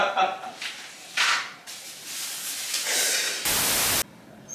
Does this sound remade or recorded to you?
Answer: recorded